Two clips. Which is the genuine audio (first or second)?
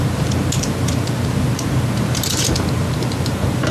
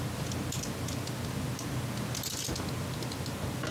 second